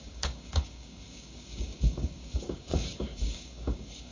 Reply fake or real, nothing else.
fake